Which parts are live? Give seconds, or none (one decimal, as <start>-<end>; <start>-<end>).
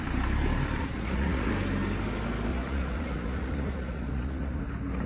0.0-0.8; 1.5-2.5; 4.6-5.1